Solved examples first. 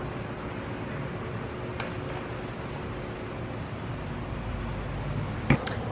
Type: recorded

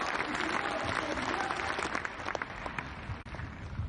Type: recorded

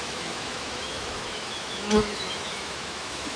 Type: remade